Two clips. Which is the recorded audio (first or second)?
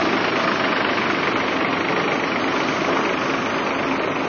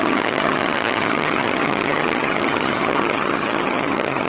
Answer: first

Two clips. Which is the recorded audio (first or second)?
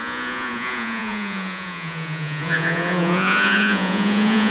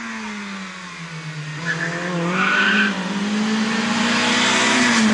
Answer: second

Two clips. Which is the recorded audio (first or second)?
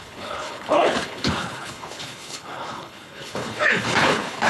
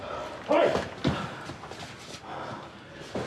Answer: second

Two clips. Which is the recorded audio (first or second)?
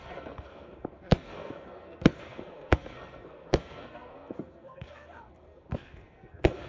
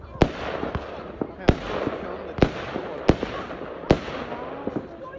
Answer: second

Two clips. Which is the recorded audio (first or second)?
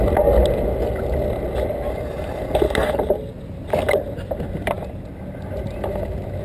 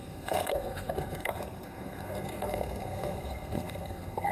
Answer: first